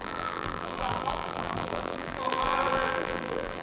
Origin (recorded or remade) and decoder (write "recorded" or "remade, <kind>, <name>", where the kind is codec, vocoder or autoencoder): remade, vocoder, BigVGAN v2